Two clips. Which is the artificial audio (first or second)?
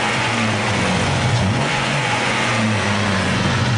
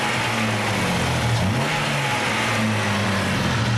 first